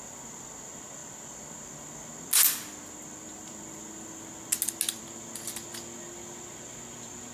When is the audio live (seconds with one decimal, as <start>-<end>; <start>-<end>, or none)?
0.0-7.3